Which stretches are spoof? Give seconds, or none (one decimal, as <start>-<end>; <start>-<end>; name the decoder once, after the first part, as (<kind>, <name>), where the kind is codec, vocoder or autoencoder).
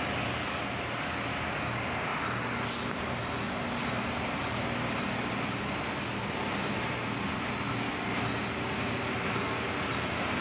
none